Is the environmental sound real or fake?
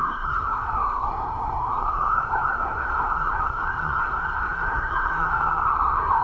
fake